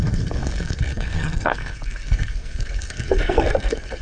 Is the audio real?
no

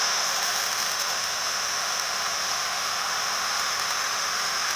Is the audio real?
no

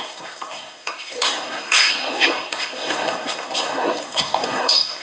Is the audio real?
no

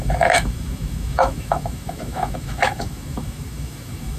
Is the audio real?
no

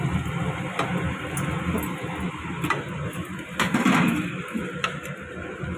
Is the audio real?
yes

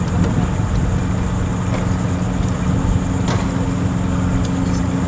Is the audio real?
yes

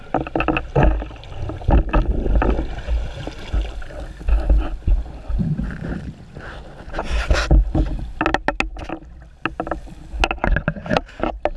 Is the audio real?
yes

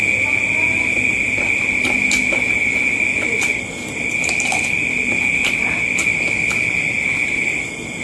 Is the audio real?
yes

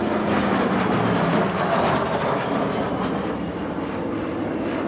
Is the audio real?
yes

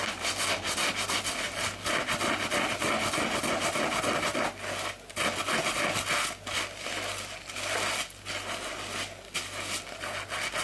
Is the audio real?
yes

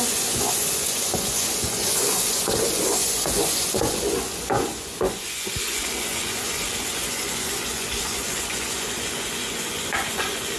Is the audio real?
no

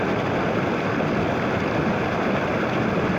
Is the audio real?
yes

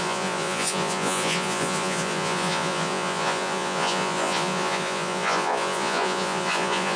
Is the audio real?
no